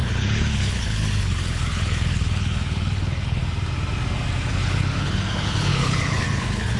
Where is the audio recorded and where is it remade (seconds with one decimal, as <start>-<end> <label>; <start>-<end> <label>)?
0.0-3.4 remade; 3.4-4.5 recorded; 4.5-6.8 remade